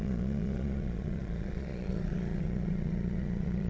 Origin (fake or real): fake